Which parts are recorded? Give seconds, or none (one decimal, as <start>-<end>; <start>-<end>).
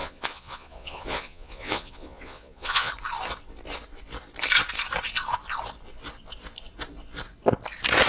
2.9-8.1